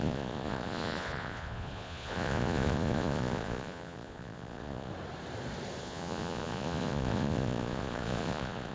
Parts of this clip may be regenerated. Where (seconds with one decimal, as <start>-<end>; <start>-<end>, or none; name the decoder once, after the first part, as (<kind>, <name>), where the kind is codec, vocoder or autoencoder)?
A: 0.0-4.9 (vocoder, Vocos); 5.8-8.7